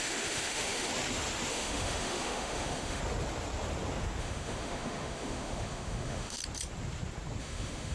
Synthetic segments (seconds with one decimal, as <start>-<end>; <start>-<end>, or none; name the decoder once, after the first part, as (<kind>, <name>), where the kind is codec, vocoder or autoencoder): 0.0-0.9 (autoencoder, DAC-VAE); 1.5-3.0; 4.2-6.4; 7.4-7.9

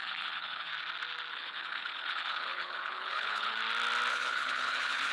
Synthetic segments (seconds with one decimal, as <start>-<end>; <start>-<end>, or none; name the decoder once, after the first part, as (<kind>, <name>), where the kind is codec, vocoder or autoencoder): 0.0-0.7 (codec, HILCodec); 1.3-3.6; 4.1-5.1

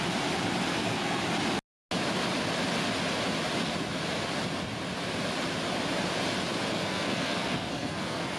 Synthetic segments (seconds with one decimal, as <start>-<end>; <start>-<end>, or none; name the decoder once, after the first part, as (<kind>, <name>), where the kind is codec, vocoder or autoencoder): 0.7-1.2 (codec, SNAC); 6.7-8.4